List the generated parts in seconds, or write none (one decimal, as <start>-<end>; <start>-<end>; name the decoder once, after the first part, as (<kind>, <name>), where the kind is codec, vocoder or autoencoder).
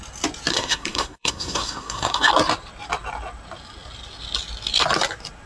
0.5-2.3 (codec, SNAC)